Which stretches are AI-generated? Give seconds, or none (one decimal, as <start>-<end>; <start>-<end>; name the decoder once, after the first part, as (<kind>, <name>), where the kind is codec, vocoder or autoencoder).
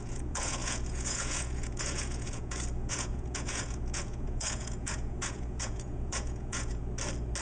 0.0-6.8 (vocoder, Vocos)